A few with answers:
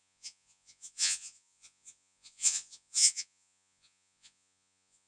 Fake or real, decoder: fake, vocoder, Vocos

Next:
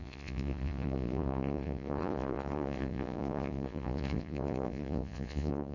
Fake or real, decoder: fake, vocoder, Vocos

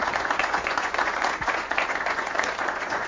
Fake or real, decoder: fake, vocoder, Vocos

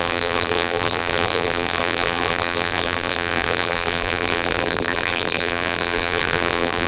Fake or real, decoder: fake, vocoder, BigVGAN v2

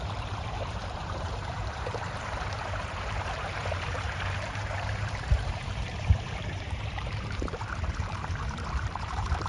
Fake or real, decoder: fake, vocoder, BigVGAN v2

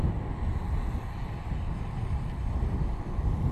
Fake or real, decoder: real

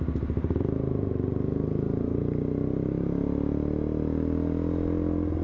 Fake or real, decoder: real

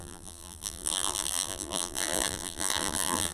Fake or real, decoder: fake, vocoder, BigVGAN v2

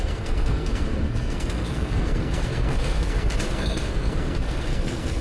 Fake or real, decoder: fake, codec, SNAC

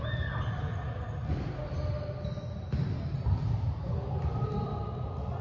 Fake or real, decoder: real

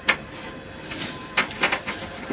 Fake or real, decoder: real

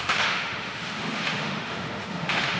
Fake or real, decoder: fake, autoencoder, DAC-VAE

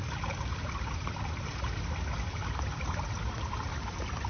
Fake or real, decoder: real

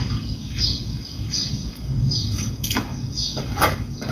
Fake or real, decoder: fake, codec, DAC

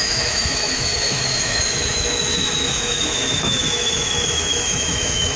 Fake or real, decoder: fake, autoencoder, DAC-VAE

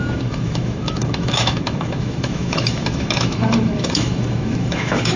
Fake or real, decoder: fake, autoencoder, DAC-VAE